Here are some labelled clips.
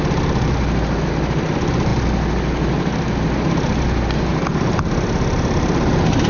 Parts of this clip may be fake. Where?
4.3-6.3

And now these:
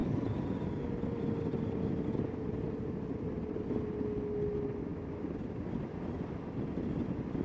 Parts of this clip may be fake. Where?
none

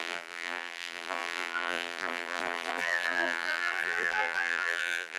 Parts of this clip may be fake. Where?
0.0-5.2

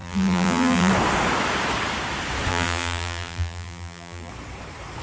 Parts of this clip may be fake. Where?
0.0-0.9; 2.5-4.3

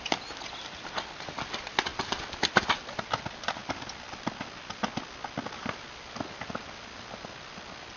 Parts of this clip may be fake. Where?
none

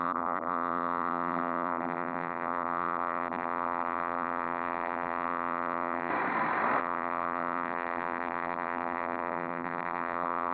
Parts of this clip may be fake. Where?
0.0-6.1; 6.8-10.5